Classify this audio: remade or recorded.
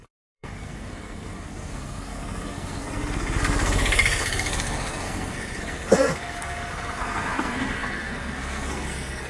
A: remade